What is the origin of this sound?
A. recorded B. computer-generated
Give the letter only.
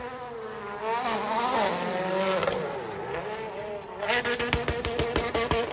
A